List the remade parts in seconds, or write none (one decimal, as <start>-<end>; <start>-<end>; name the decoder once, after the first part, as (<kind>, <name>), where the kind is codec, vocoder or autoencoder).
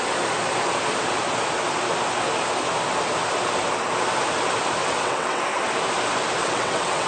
4.8-5.4 (vocoder, WaveNeXt); 6.4-7.1